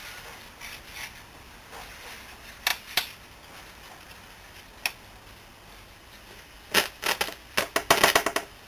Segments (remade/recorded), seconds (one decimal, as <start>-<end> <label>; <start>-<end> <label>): 0.0-8.7 recorded

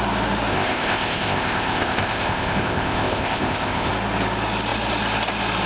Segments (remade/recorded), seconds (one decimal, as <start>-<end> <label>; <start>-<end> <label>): 0.0-0.5 recorded; 0.5-3.9 remade; 3.9-5.7 recorded

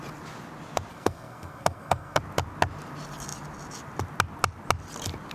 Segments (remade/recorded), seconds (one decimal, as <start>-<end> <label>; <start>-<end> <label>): 0.0-0.9 recorded; 0.9-2.2 remade; 2.2-5.3 recorded

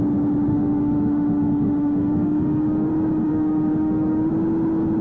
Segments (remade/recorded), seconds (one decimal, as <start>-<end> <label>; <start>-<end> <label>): 0.0-0.5 recorded; 0.5-2.9 remade; 2.9-3.3 recorded; 3.3-4.3 remade; 4.3-5.0 recorded

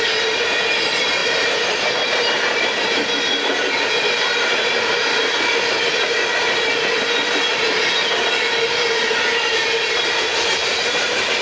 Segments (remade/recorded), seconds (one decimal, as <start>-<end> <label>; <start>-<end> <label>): 0.0-1.2 recorded; 1.2-3.2 remade; 3.2-11.4 recorded

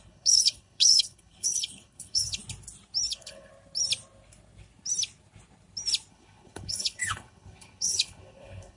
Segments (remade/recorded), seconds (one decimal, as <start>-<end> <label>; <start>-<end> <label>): 0.0-2.4 remade; 2.4-3.1 recorded; 3.1-3.5 remade; 3.5-6.1 recorded; 6.1-8.8 remade